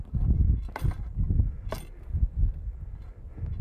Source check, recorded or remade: recorded